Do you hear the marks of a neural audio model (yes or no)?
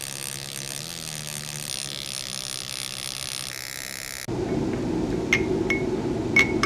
no